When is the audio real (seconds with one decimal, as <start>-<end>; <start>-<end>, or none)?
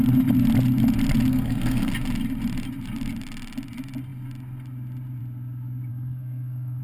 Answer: 0.0-1.3; 1.9-5.9